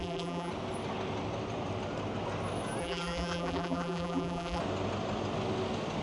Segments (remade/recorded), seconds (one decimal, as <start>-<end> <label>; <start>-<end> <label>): 0.0-0.5 remade; 0.5-2.8 recorded; 2.8-4.6 remade; 4.6-6.0 recorded